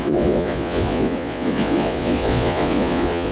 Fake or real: fake